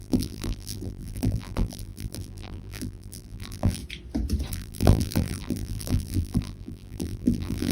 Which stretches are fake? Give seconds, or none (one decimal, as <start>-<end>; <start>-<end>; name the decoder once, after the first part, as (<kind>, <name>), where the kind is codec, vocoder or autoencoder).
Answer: 0.0-3.8 (vocoder, BigVGAN v2); 4.5-7.7

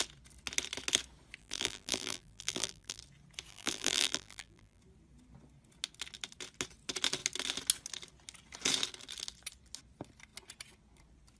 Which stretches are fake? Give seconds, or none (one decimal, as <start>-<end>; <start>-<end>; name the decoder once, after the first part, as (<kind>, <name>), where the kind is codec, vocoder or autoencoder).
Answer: 1.4-3.0 (vocoder, BigVGAN v2); 3.5-4.8

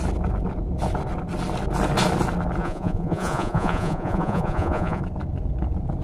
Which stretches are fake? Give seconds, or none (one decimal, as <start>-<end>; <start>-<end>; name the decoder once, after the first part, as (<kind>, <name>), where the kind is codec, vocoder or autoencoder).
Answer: 2.6-5.0 (vocoder, Vocos)

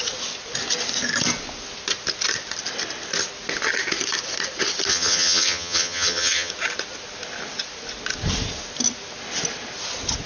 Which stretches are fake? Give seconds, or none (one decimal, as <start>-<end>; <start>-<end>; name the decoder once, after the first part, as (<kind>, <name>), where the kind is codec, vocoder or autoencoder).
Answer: 4.9-6.5 (vocoder, HiFi-GAN)

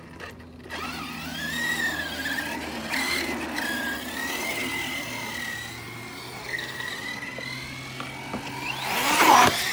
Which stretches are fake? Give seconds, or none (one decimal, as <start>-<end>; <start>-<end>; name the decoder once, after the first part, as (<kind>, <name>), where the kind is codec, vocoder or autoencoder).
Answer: 6.4-6.9 (codec, SNAC)

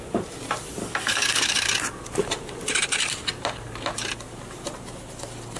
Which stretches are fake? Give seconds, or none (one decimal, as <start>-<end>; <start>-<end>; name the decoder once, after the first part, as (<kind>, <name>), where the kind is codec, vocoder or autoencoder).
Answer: 0.8-1.7 (codec, DAC)

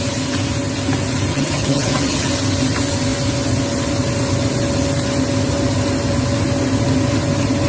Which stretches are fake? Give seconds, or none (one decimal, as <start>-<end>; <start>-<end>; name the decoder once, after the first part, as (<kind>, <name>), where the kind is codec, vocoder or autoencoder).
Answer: 1.3-2.3 (vocoder, HiFi-GAN)